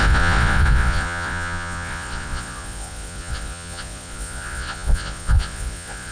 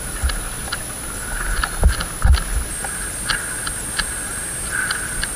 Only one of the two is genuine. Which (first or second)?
second